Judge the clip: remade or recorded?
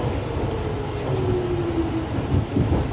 recorded